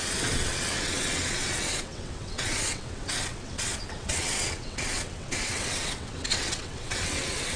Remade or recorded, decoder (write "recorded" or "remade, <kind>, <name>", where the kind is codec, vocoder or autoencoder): remade, vocoder, WaveNeXt